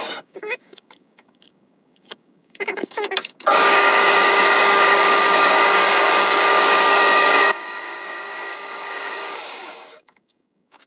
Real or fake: fake